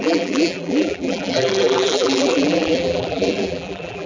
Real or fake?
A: fake